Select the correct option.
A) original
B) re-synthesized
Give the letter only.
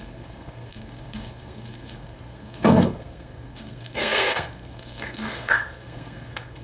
B